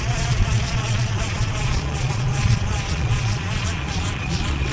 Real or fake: fake